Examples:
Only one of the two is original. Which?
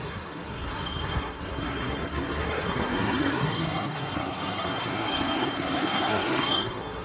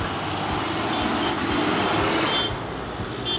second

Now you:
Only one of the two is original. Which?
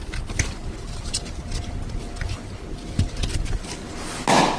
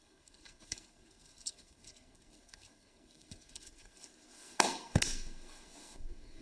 first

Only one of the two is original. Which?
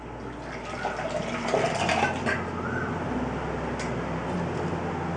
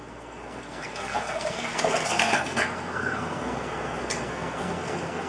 first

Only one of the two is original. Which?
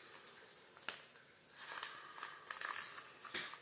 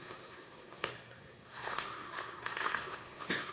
first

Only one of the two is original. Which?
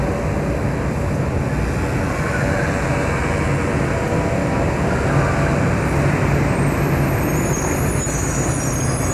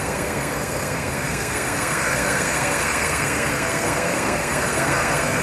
first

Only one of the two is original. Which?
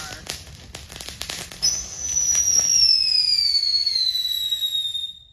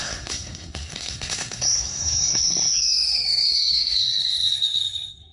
first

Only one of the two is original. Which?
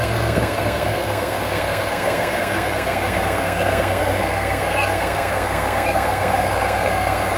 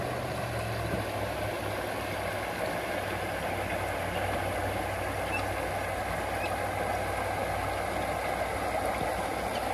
second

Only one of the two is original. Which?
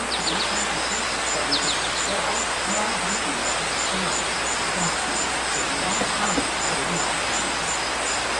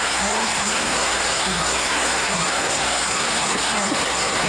first